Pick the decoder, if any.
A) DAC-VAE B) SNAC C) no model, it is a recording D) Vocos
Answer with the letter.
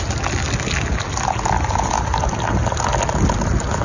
C